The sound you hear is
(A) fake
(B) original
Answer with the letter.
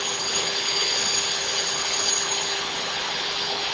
A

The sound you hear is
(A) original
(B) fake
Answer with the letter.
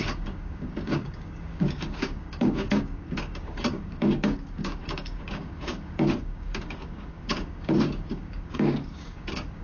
B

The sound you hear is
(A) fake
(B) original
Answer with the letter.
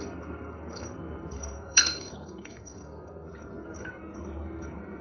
A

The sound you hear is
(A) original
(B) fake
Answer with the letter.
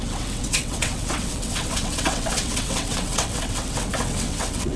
B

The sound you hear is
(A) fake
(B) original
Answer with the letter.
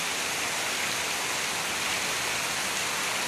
B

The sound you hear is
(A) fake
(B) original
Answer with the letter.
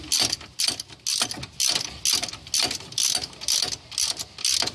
B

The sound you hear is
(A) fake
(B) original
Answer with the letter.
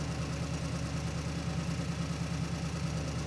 A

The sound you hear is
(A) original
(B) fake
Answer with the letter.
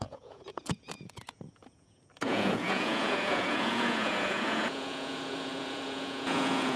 B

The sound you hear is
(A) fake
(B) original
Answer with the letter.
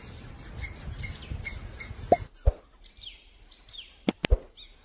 B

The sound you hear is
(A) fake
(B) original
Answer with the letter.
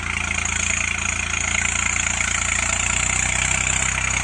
B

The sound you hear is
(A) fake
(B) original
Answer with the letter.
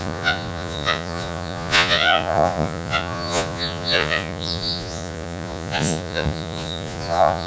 A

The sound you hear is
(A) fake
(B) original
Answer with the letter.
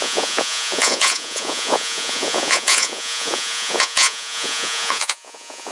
A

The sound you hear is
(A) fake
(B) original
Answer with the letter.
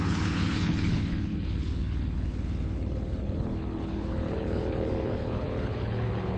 A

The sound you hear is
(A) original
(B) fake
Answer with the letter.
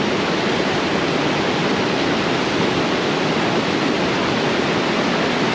A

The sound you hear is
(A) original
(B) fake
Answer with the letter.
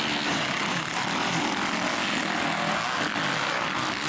A